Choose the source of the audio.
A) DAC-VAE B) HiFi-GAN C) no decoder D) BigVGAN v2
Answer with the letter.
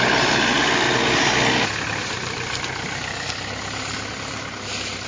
C